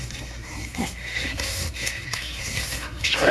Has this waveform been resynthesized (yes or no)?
yes